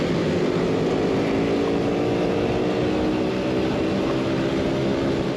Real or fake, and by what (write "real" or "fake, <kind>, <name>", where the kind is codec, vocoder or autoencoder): real